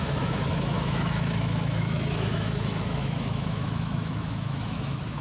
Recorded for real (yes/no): no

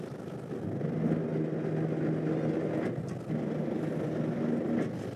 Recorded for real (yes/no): yes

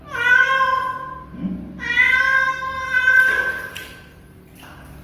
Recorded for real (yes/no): yes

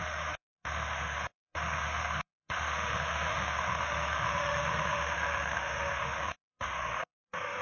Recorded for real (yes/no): no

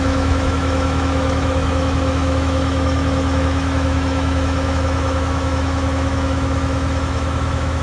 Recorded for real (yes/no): no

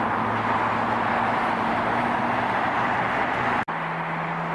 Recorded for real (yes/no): yes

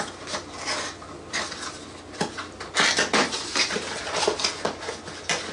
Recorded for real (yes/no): yes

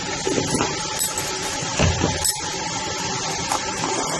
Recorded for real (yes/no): yes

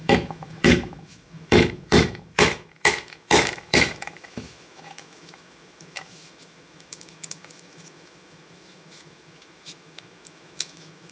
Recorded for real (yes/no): no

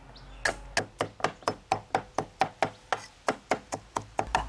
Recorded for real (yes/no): yes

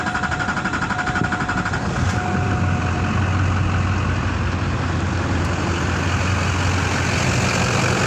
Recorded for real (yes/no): yes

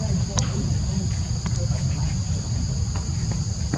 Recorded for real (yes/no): yes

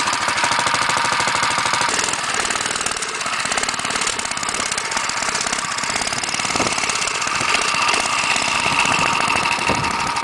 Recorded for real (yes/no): yes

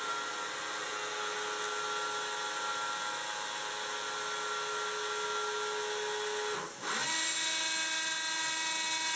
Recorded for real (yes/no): yes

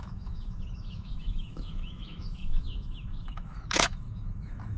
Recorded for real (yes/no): no